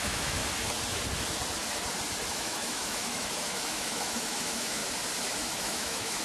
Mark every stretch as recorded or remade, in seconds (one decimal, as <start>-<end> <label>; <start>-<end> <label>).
0.0-0.4 remade; 0.4-2.3 recorded; 2.3-4.8 remade; 4.8-5.4 recorded; 5.4-6.2 remade

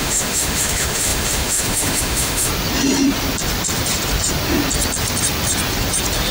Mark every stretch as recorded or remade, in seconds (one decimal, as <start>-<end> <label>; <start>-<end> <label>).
0.0-2.5 remade; 2.5-6.3 recorded

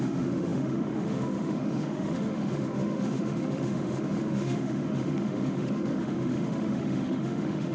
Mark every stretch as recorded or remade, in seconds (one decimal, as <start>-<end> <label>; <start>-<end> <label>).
0.0-7.7 remade

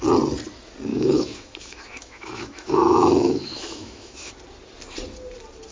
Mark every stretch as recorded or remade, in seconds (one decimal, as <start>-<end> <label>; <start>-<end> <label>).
0.0-0.9 recorded; 0.9-4.3 remade; 4.3-5.7 recorded